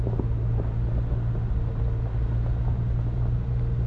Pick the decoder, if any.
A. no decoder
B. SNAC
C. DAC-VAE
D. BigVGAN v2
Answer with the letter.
A